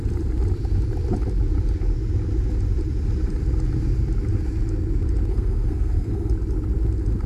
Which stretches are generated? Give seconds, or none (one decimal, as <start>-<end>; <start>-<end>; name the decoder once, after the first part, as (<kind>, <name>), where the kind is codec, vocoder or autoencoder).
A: 5.3-6.3 (codec, SNAC)